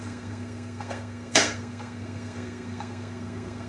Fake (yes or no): yes